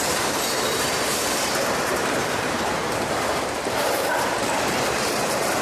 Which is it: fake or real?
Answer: fake